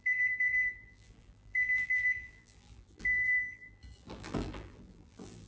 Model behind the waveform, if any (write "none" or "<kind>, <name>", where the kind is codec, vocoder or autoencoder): vocoder, BigVGAN v2